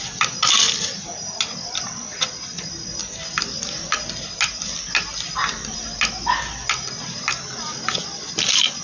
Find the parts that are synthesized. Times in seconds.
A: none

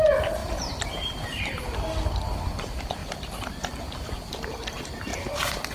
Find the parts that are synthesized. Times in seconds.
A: 0.4-1.6 (vocoder, BigVGAN v2); 5.1-5.7

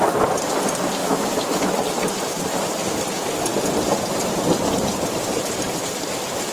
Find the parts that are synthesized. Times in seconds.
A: 1.0-1.7 (autoencoder, DAC-VAE)

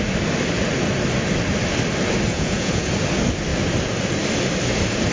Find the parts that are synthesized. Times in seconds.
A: 2.3-2.9 (vocoder, Vocos)

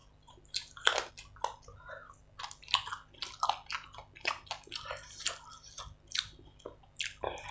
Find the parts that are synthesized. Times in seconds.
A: none

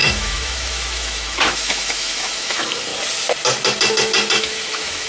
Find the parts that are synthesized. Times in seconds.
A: 0.0-2.9 (autoencoder, DAC-VAE); 4.4-5.1

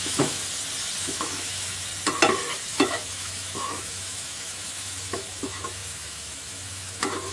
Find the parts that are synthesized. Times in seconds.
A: 0.0-0.4 (autoencoder, DAC-VAE); 1.0-1.9; 2.7-7.3